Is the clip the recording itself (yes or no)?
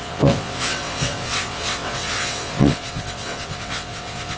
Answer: no